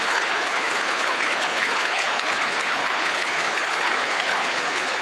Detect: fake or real fake